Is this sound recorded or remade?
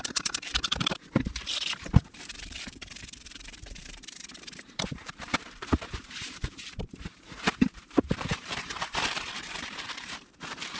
remade